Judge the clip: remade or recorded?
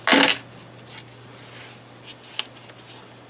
recorded